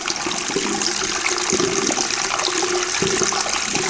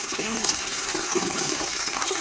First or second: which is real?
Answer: first